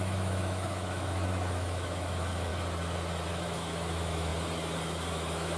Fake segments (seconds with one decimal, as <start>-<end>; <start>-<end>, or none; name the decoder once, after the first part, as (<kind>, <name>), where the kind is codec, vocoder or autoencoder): 0.0-2.5 (autoencoder, DAC-VAE); 3.3-4.3; 5.1-5.6